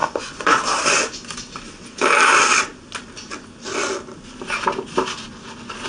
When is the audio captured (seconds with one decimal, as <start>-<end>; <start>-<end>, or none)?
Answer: 0.6-5.9